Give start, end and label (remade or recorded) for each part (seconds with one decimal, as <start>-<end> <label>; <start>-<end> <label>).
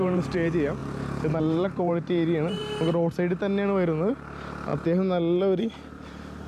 0.0-2.6 remade; 2.6-4.1 recorded; 4.1-4.7 remade; 4.7-5.6 recorded; 5.6-6.5 remade